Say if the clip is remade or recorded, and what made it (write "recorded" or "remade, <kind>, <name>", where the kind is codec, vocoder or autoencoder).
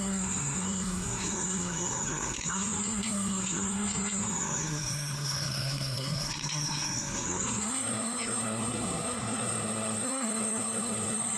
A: remade, codec, SNAC